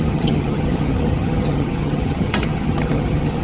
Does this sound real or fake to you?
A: fake